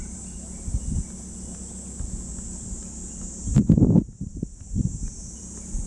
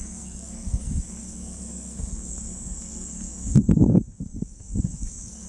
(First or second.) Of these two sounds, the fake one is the second